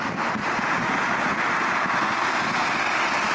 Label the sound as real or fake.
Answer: real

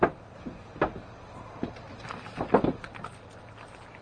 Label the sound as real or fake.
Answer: real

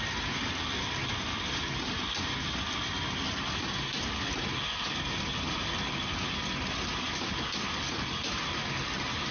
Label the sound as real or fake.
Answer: real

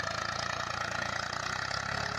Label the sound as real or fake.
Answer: fake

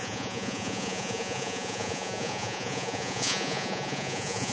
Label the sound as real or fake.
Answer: fake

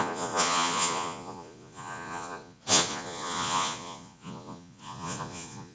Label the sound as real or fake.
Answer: fake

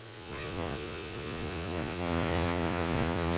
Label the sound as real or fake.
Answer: fake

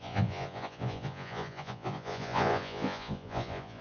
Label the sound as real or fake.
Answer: fake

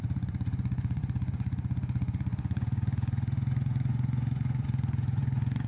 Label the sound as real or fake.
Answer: fake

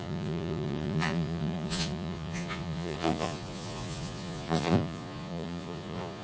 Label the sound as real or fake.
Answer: fake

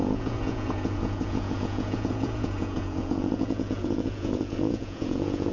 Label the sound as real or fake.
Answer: fake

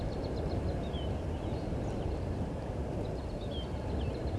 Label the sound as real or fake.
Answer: real